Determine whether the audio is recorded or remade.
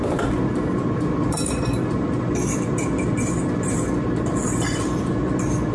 remade